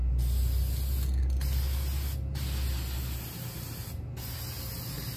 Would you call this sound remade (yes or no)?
no